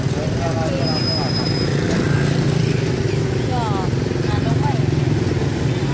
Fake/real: real